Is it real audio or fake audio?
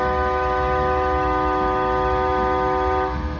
fake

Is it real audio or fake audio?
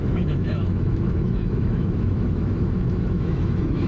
fake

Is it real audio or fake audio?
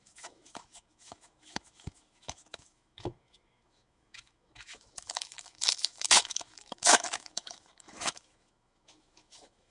fake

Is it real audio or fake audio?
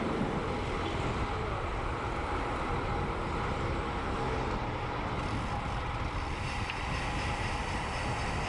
real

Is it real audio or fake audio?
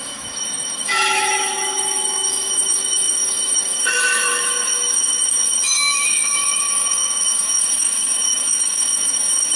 fake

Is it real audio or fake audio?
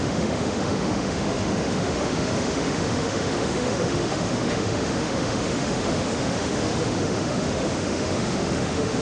fake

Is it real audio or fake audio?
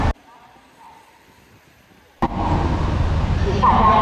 real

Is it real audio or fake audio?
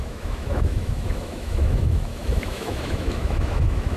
fake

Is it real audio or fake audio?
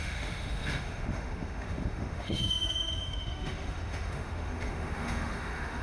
fake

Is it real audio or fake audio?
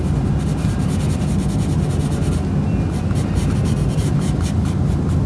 real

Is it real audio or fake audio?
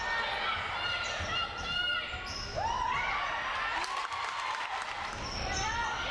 real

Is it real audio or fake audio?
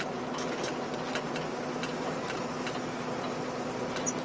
real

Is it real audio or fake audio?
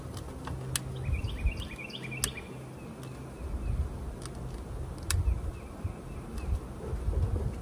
real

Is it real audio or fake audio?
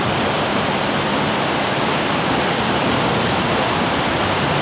real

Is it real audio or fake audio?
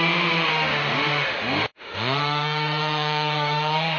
fake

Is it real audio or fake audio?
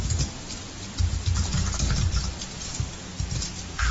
real